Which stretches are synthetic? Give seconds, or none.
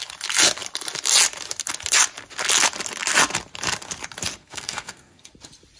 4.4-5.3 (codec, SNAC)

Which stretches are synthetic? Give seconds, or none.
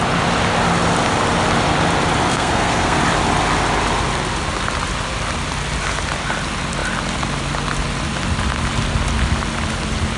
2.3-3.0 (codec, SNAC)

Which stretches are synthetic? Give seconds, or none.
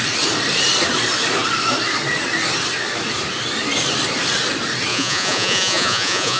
4.9-6.4 (vocoder, Vocos)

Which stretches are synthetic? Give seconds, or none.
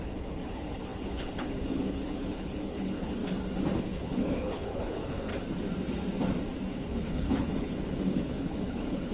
0.0-3.2 (codec, HILCodec); 3.8-5.3; 6.7-9.1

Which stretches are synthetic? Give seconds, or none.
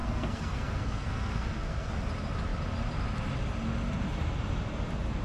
0.0-1.9 (codec, SNAC)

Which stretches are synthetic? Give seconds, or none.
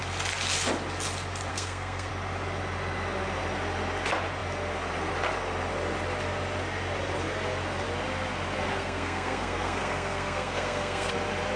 1.5-2.1 (codec, SNAC); 8.7-11.1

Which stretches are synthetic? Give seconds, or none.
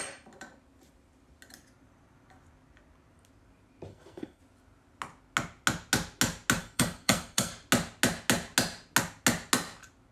3.9-4.4 (codec, SNAC); 6.6-7.5